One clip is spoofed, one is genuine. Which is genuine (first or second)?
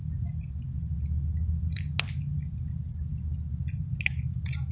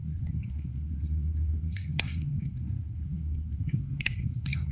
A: first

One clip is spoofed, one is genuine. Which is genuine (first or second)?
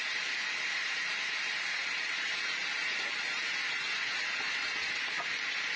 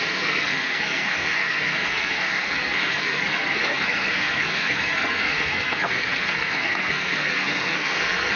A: first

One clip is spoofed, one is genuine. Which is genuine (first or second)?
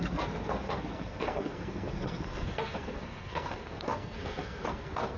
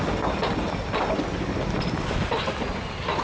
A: second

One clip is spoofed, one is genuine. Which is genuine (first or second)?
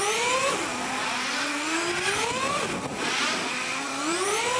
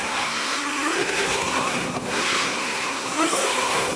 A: first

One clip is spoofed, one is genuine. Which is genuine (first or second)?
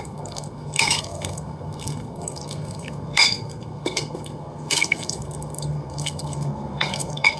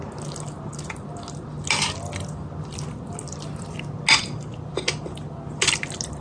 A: second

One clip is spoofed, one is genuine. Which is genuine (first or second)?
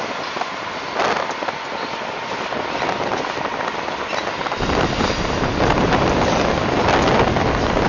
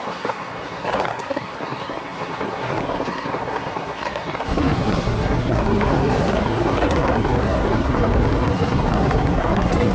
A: first